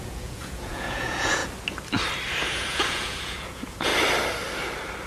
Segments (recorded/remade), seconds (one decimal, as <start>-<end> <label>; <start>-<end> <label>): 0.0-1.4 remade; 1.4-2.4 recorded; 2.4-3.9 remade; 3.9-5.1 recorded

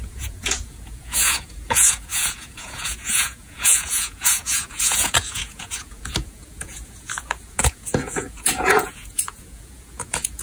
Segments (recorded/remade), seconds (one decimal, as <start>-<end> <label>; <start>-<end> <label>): 0.0-10.4 remade

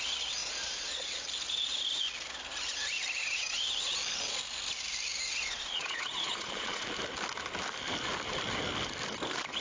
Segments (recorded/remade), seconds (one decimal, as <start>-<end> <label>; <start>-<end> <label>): 0.0-0.4 recorded; 0.4-1.1 remade; 1.1-3.2 recorded; 3.2-3.9 remade; 3.9-5.3 recorded; 5.3-6.9 remade; 6.9-9.6 recorded